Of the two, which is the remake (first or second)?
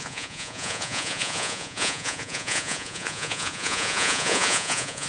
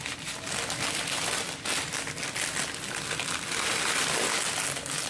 first